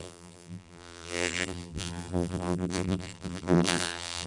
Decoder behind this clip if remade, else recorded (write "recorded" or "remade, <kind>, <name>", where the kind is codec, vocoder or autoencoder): remade, vocoder, BigVGAN v2